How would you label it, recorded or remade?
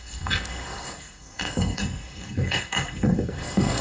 remade